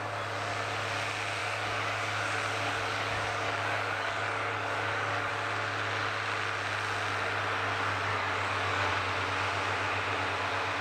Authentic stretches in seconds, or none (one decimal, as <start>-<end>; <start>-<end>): 0.0-1.4; 5.3-8.1; 8.9-10.8

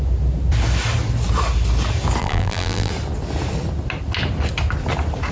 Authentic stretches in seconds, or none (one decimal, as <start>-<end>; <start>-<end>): 0.0-2.2; 2.9-5.3

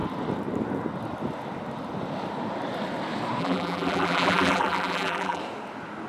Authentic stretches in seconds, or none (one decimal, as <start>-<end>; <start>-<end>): 0.0-3.4; 5.4-6.1

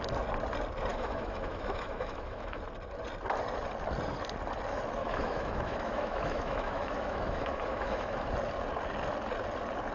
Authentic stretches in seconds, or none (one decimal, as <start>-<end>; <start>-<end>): 0.0-0.9; 2.6-5.0; 8.3-9.9

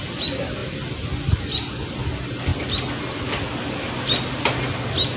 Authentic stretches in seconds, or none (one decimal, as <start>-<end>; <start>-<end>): 0.0-5.2